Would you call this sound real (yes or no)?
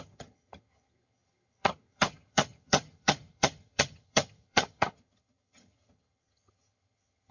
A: no